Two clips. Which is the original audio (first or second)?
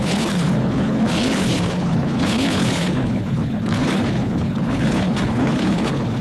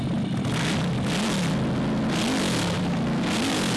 second